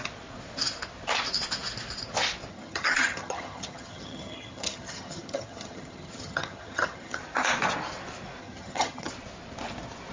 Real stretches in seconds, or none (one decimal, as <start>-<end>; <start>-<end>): 0.0-2.5; 7.2-8.4; 9.1-10.1